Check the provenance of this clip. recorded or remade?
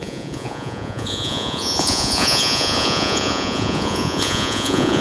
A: remade